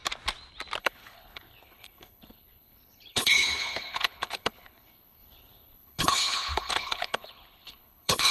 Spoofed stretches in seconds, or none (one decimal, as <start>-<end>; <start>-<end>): 0.8-8.3